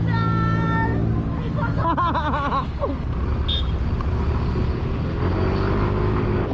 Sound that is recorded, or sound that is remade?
recorded